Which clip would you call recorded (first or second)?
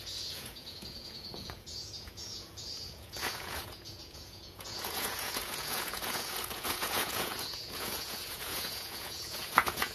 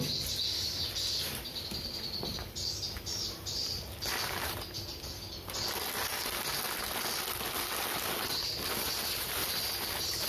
second